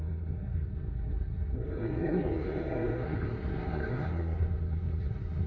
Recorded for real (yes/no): no